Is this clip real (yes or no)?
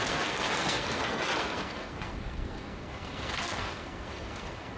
no